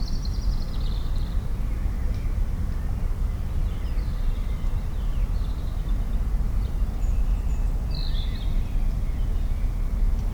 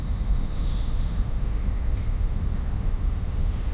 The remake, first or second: second